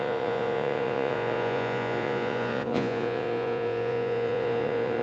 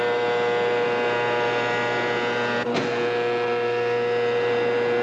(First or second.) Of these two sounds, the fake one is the first